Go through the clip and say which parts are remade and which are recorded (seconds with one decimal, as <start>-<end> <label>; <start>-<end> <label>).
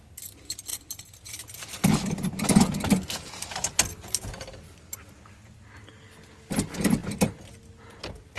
0.0-0.7 recorded; 0.7-1.7 remade; 1.7-4.3 recorded; 4.3-5.0 remade; 5.0-8.4 recorded